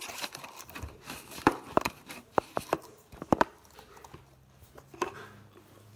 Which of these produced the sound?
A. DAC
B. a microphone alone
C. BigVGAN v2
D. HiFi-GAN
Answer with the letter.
C